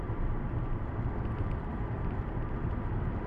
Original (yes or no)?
no